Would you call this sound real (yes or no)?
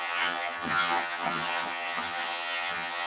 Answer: no